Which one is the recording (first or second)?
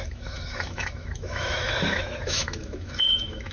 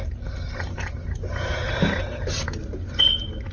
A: second